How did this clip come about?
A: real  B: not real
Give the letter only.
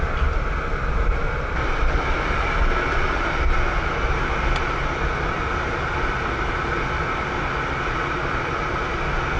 A